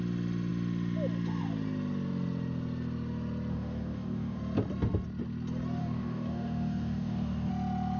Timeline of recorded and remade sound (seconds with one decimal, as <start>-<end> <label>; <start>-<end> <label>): 0.0-3.5 recorded; 3.5-4.4 remade; 4.4-5.8 recorded; 5.8-7.5 remade; 7.5-8.0 recorded